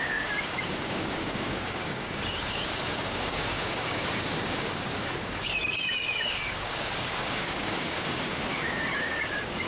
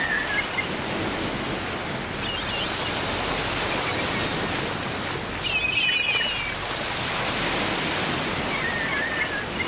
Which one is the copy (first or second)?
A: first